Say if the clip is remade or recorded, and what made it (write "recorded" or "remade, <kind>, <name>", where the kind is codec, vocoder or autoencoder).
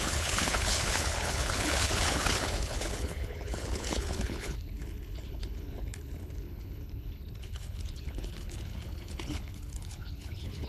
remade, codec, HILCodec